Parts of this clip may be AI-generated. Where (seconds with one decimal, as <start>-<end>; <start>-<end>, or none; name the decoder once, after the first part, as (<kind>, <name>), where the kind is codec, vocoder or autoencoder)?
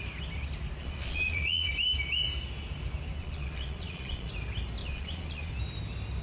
0.8-1.7 (vocoder, Vocos); 3.2-4.3; 4.8-5.5